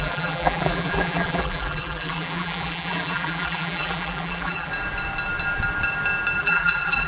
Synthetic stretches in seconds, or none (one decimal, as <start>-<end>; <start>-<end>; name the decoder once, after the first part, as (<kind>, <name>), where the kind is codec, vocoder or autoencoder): 0.0-4.7 (vocoder, BigVGAN v2); 6.4-7.1